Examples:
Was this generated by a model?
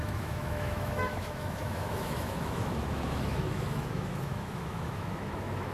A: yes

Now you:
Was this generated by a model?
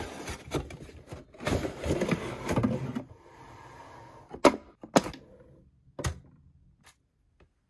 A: no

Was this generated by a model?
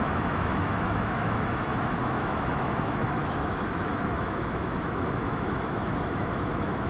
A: yes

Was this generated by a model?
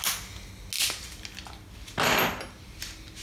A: no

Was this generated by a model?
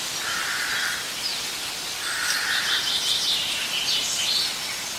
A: no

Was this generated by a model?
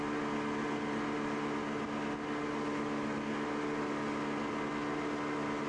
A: no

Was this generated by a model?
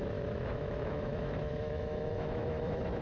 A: yes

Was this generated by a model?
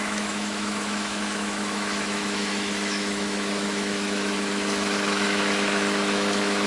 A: yes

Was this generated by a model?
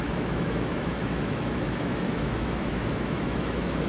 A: yes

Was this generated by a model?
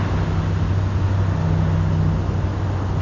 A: no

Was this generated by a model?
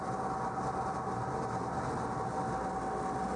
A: no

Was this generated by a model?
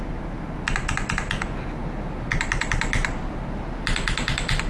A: no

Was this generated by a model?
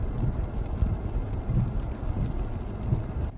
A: no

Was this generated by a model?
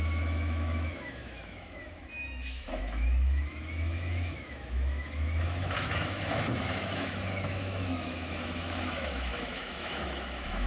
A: yes